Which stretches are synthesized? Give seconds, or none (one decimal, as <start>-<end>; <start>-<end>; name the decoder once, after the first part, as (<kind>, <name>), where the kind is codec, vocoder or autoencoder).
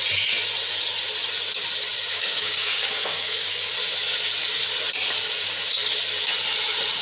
1.9-3.7 (codec, DAC)